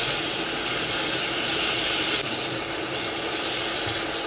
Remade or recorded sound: remade